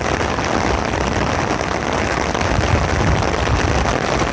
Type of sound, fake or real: real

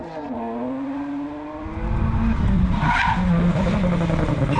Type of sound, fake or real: real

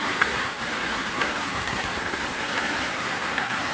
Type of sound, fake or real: fake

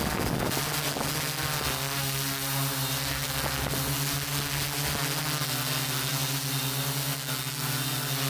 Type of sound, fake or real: real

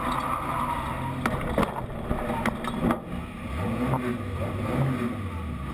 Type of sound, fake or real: real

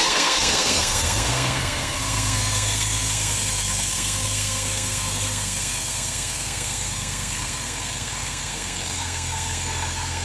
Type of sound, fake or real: fake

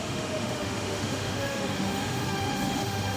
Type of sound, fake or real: fake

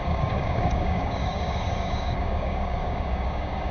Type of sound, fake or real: fake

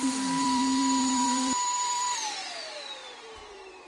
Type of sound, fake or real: fake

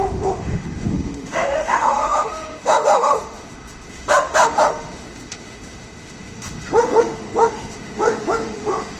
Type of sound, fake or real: fake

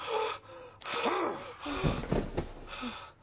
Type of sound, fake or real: real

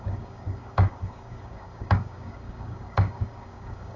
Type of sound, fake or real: fake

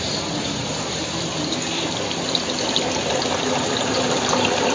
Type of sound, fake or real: real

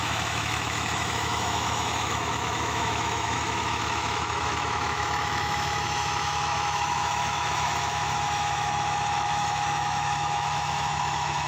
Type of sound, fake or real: fake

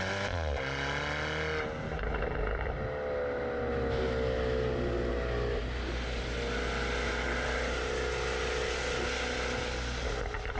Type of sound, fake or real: real